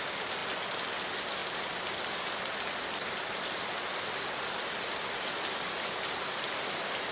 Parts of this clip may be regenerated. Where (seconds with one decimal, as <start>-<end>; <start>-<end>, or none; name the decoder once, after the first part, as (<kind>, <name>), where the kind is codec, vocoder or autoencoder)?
none